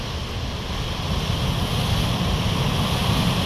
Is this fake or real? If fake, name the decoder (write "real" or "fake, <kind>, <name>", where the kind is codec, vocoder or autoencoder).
real